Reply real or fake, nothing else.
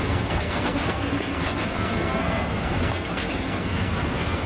fake